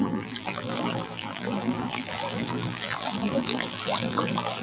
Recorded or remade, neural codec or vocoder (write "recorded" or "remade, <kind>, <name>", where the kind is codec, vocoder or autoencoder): remade, vocoder, BigVGAN v2